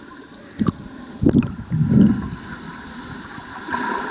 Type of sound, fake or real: real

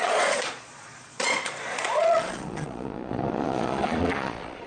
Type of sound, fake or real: fake